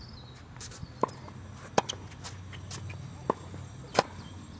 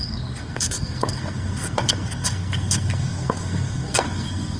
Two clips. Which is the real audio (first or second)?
first